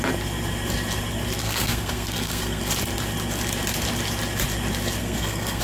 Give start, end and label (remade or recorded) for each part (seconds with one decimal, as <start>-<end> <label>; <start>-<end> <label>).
0.0-1.4 recorded; 1.4-2.6 remade; 2.6-5.0 recorded; 5.0-5.6 remade